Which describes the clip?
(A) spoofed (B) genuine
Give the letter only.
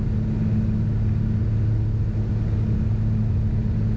B